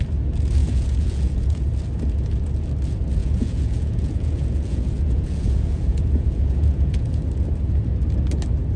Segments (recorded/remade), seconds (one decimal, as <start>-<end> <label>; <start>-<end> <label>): 0.0-0.6 recorded; 0.6-1.7 remade; 1.7-3.2 recorded; 3.2-7.2 remade; 7.2-8.8 recorded